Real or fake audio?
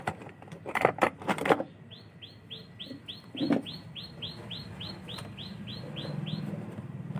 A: real